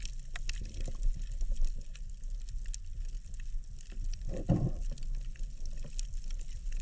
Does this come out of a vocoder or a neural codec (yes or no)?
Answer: no